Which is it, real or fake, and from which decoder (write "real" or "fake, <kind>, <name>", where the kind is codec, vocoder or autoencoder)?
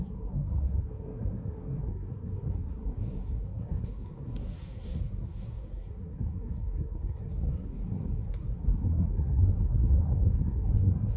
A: fake, codec, SNAC